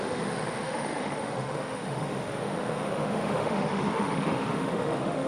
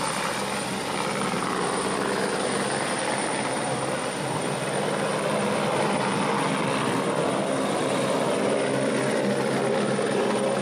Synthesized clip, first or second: first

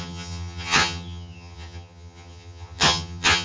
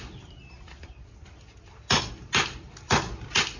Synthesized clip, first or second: first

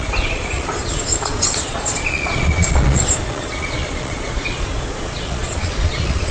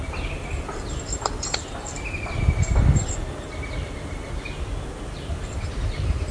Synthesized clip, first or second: first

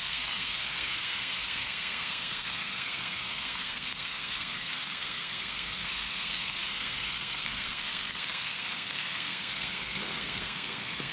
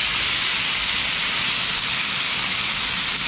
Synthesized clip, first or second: first